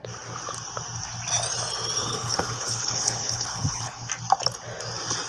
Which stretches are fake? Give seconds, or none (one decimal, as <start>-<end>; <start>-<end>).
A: 2.0-4.1